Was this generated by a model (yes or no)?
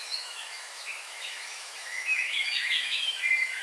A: yes